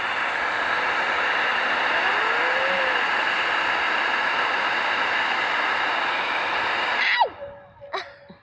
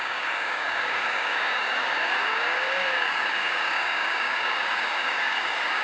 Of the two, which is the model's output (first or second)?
second